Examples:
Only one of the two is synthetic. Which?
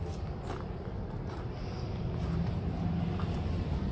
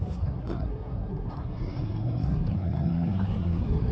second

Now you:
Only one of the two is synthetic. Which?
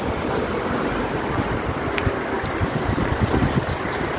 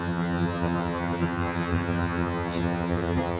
second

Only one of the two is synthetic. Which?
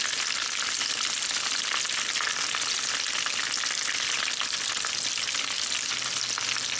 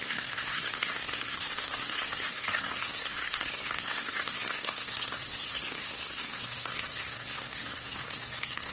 second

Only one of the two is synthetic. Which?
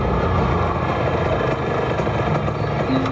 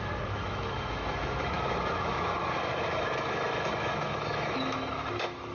second